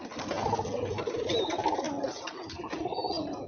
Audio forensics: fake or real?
real